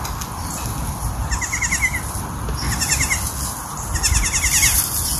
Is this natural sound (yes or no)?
yes